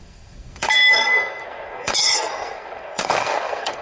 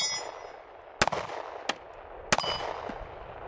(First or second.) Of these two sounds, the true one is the second